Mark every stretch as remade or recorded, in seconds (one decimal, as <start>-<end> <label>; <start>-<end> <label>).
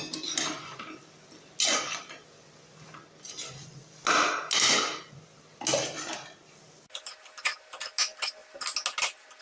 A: 0.0-9.4 recorded